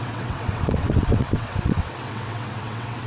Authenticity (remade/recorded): remade